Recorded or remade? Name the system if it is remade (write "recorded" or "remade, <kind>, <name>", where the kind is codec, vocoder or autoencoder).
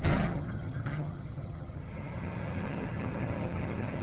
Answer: remade, vocoder, HiFi-GAN